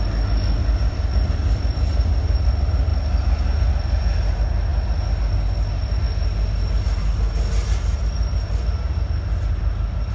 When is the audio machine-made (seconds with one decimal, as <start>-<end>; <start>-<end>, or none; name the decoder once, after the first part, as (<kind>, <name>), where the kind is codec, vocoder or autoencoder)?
0.6-2.5 (vocoder, BigVGAN v2)